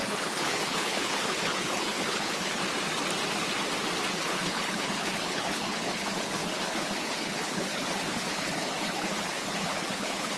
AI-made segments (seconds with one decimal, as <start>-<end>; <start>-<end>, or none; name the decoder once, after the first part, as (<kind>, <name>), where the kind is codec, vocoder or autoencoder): 0.0-2.6 (codec, HILCodec); 4.1-10.4